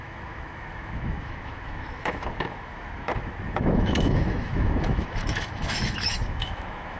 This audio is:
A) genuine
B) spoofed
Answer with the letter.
B